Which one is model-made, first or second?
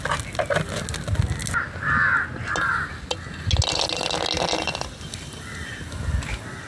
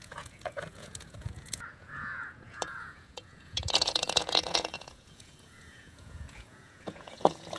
second